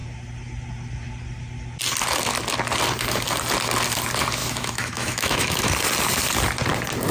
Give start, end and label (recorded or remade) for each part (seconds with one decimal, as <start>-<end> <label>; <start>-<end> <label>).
0.0-4.4 recorded; 4.4-5.7 remade; 5.7-7.1 recorded